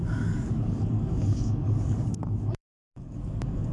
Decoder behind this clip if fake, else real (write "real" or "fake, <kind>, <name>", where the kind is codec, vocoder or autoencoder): fake, codec, DAC